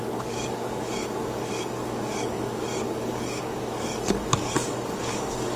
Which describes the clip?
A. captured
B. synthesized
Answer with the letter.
B